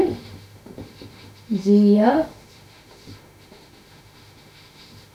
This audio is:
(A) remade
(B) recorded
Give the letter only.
A